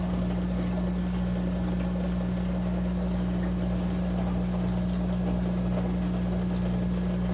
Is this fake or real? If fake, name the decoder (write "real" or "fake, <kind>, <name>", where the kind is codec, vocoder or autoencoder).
real